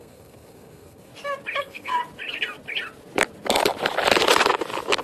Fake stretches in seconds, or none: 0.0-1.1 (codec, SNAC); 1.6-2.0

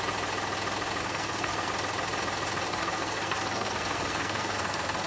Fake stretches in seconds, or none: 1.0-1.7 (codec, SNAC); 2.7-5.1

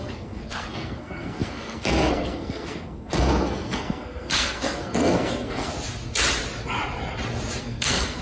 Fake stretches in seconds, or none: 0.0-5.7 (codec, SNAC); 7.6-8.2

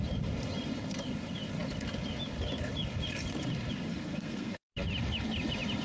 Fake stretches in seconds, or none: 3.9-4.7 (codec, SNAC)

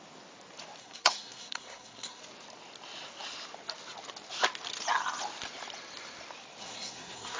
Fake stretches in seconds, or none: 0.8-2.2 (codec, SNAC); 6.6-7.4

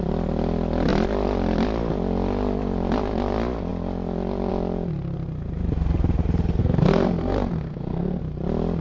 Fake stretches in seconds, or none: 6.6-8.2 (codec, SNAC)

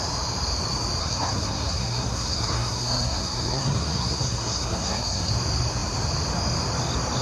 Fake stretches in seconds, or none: 1.0-5.3 (codec, SNAC)